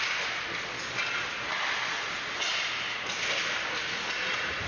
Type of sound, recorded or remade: recorded